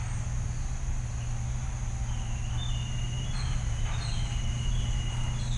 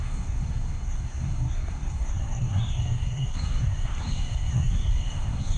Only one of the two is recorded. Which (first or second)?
first